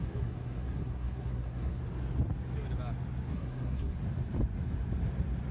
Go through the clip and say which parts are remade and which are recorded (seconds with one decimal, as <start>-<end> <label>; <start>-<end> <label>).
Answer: 0.0-1.8 remade; 1.8-3.3 recorded; 3.3-4.0 remade; 4.0-5.5 recorded